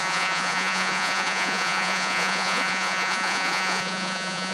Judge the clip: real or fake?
fake